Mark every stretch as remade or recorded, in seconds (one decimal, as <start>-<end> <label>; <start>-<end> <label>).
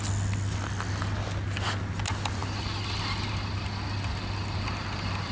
0.0-5.3 recorded